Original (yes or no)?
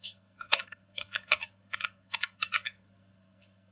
no